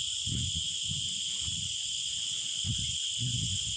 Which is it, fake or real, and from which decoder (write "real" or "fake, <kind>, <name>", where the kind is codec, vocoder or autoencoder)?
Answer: real